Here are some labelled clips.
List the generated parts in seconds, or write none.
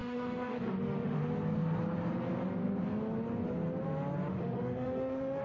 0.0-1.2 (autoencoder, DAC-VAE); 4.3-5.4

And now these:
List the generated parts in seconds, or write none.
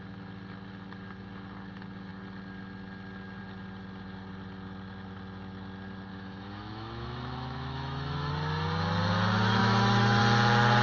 6.1-8.3 (autoencoder, DAC-VAE); 9.6-10.2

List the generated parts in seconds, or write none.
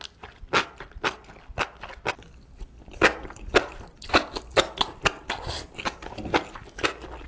none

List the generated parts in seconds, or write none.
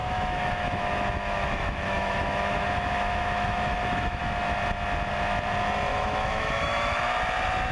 0.0-4.2 (autoencoder, DAC-VAE); 5.9-7.0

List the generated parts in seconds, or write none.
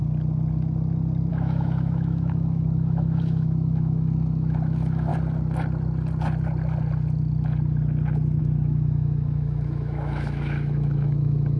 1.3-5.1 (autoencoder, DAC-VAE); 8.4-11.6